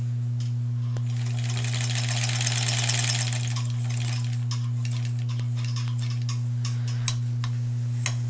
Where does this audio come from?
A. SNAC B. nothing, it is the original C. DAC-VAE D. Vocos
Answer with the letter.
B